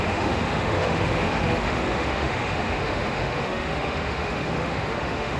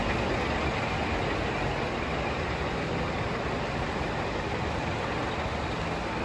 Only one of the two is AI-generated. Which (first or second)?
first